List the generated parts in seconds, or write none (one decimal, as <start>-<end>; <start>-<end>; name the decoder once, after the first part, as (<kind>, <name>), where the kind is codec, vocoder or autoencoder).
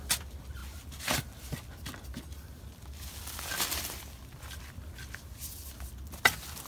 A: none